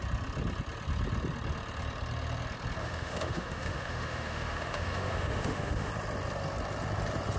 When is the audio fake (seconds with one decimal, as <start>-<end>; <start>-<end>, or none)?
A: 2.8-5.9